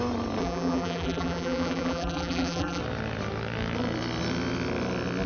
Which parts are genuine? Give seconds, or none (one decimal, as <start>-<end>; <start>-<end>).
0.0-0.4; 2.8-5.3